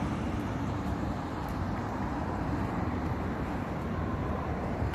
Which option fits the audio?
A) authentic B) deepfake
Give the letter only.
B